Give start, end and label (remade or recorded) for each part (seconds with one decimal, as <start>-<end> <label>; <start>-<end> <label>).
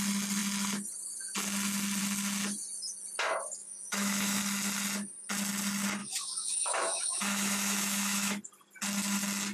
0.0-3.6 recorded; 3.6-4.4 remade; 4.4-6.0 recorded; 6.0-8.4 remade; 8.4-9.5 recorded